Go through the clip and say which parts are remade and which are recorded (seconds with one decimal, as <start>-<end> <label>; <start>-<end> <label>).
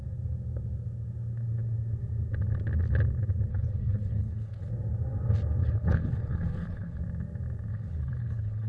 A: 0.0-3.5 recorded; 3.5-4.7 remade; 4.7-5.6 recorded; 5.6-7.0 remade; 7.0-7.7 recorded; 7.7-8.7 remade